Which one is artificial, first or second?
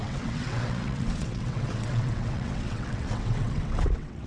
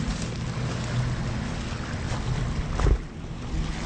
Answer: first